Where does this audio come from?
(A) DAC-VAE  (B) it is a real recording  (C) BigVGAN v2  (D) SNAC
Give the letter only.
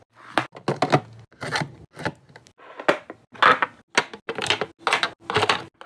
B